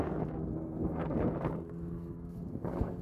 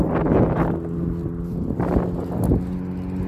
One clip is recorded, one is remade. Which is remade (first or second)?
first